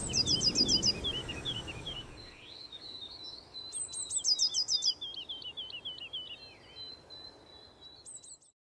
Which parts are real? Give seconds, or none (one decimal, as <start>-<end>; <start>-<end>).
0.0-1.2; 3.6-8.6